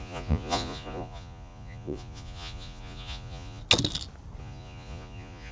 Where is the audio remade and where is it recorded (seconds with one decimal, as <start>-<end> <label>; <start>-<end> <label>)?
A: 0.0-3.6 remade; 3.6-4.4 recorded; 4.4-5.5 remade